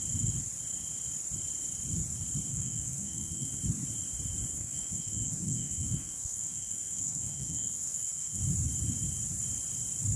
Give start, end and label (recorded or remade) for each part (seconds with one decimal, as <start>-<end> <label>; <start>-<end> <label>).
0.0-2.5 recorded; 2.5-3.6 remade; 3.6-4.5 recorded; 4.5-8.4 remade; 8.4-10.2 recorded